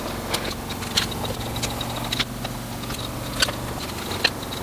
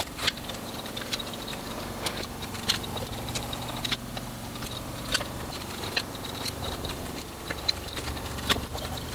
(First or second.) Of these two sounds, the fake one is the second